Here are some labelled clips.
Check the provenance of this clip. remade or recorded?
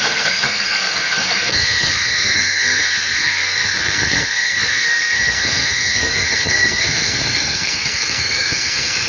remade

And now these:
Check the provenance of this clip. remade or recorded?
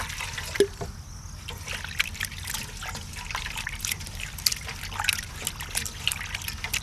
recorded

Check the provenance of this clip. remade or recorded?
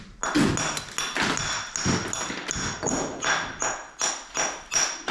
recorded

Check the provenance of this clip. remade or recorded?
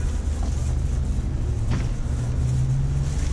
recorded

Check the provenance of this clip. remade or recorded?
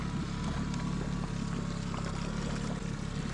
recorded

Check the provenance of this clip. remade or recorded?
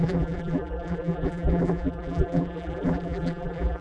remade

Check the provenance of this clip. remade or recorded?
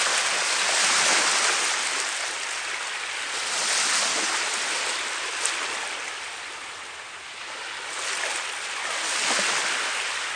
recorded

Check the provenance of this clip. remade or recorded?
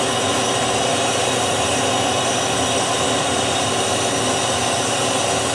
recorded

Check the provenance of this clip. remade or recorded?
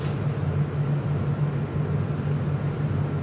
recorded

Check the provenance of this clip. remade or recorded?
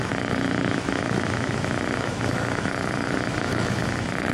remade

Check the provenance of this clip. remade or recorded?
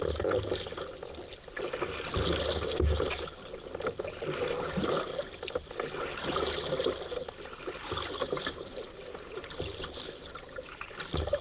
recorded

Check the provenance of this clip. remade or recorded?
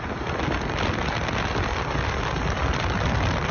recorded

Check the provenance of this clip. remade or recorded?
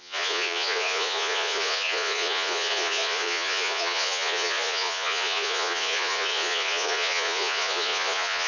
remade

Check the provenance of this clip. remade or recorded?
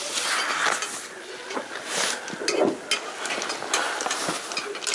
recorded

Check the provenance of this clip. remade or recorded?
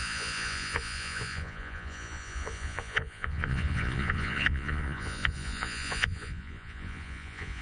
remade